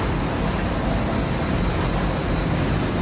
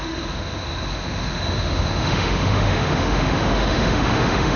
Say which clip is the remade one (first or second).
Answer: second